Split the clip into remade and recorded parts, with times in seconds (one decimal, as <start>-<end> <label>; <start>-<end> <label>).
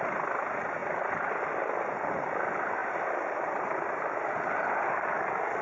0.0-5.6 recorded